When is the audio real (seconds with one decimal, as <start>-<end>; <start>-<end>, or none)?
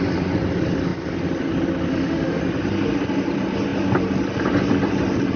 0.0-1.9; 2.4-5.4